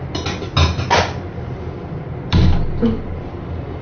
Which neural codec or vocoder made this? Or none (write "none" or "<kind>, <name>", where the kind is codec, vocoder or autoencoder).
none